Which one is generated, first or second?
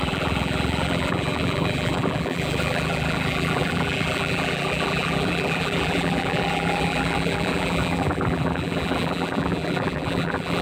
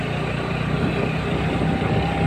first